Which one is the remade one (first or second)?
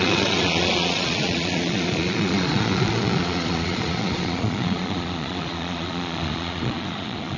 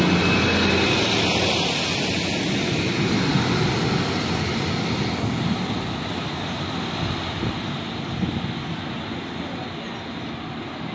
first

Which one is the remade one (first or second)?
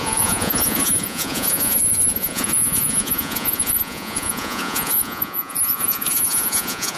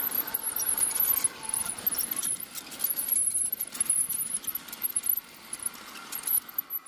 first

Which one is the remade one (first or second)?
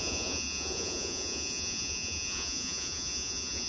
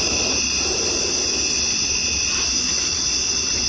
first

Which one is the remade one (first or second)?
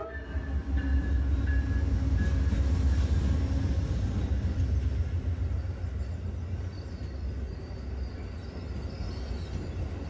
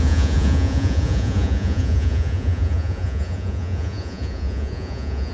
second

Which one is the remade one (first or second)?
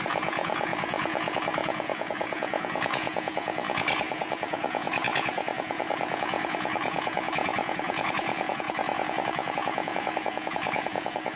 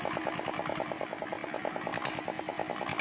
first